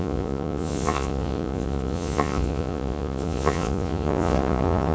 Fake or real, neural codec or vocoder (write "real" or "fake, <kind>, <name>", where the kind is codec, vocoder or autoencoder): fake, vocoder, Vocos